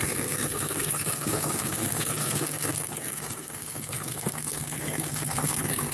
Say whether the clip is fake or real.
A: fake